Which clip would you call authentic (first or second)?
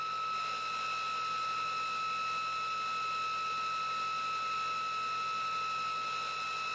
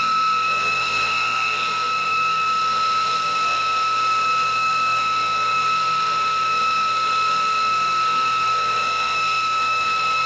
first